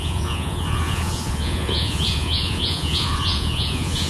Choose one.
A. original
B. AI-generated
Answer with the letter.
B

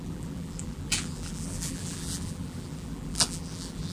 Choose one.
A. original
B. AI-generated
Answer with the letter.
B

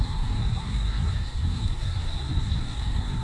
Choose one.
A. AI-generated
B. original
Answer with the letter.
A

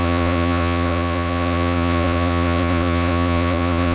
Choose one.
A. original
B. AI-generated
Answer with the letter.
B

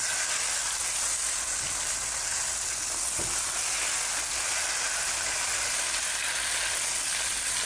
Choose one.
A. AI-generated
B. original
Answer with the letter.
B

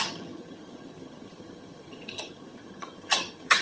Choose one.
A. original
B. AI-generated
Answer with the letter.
B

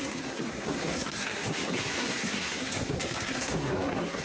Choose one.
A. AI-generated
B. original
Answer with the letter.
A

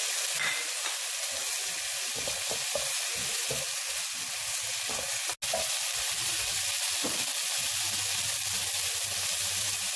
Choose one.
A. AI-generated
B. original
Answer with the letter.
B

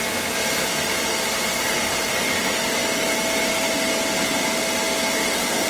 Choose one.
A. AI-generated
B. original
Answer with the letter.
B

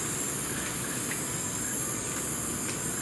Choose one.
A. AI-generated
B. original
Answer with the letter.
B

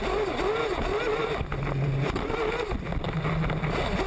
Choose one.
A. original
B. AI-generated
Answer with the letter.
A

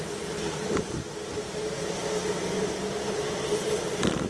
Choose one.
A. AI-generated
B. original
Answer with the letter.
B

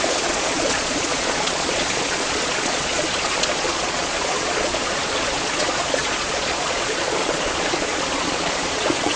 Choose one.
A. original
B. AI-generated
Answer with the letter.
B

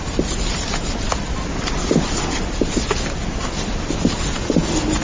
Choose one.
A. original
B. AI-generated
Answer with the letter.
A